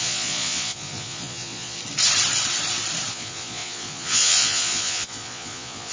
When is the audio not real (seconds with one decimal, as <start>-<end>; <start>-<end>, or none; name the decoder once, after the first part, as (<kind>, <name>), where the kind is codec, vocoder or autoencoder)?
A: 0.0-1.8 (vocoder, Vocos); 3.1-5.9